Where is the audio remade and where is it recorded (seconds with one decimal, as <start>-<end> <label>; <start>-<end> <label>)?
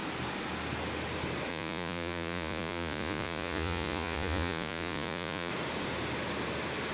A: 0.0-1.5 recorded; 1.5-5.5 remade; 5.5-6.9 recorded